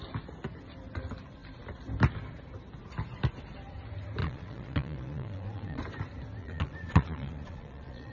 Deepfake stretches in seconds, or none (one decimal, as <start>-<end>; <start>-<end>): 4.2-5.8; 6.4-8.1